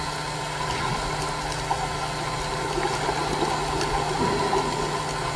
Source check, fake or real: real